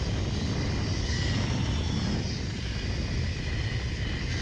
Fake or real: real